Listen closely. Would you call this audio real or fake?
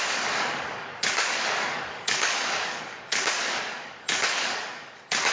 fake